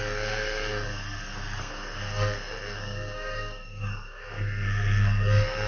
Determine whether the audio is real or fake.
fake